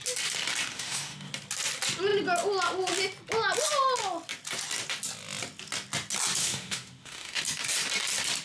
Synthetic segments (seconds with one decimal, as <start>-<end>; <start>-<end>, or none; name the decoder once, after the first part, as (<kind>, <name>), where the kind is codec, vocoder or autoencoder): 0.7-1.3 (autoencoder, DAC-VAE); 6.4-7.4